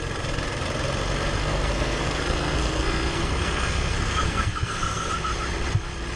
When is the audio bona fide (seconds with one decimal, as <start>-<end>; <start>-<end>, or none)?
0.0-1.4; 5.1-6.2